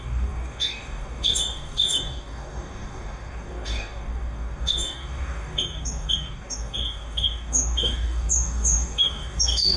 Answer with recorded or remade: remade